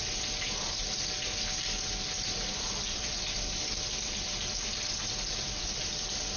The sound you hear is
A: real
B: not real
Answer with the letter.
A